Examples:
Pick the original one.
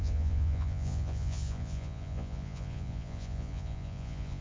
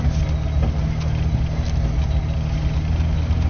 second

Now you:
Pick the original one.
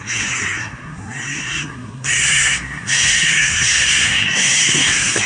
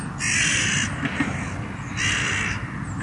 second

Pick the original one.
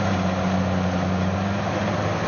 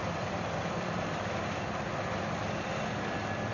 first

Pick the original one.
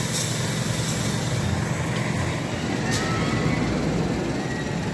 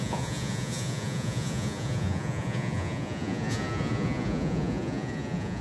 first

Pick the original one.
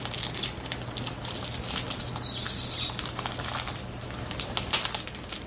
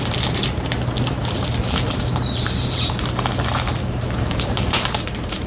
first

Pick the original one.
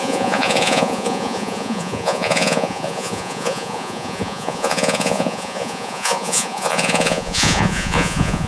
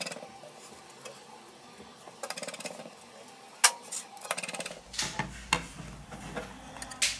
second